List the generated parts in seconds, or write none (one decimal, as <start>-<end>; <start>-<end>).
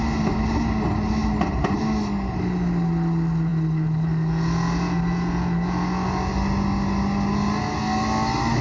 1.2-1.8